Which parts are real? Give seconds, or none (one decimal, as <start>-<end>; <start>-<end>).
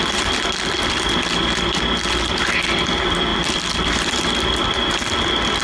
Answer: 0.0-3.3; 4.1-5.6